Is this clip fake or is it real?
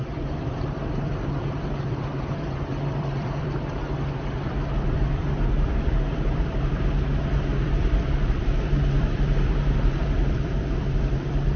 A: fake